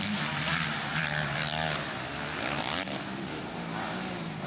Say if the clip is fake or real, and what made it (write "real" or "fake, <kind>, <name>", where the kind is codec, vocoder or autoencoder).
real